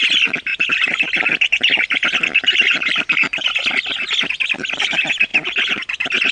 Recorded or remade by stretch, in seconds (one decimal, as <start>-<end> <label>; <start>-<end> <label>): 0.0-6.3 recorded